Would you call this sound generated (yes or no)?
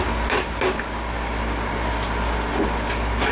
no